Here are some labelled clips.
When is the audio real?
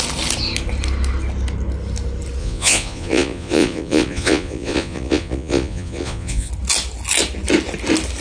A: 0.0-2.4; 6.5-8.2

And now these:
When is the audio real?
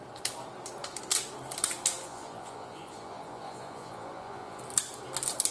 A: 0.0-2.0; 4.6-5.5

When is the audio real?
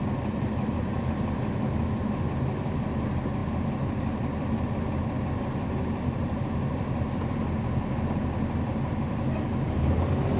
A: 0.0-10.4